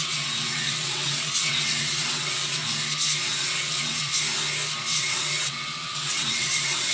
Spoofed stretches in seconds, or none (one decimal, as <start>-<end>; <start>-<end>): 0.0-2.6; 3.4-4.1; 4.9-6.9